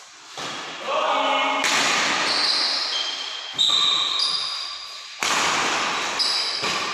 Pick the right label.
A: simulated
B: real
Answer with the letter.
B